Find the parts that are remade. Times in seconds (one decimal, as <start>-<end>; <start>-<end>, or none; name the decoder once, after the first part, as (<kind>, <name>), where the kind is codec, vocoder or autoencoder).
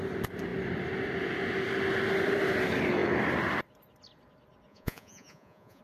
4.7-5.8 (vocoder, Vocos)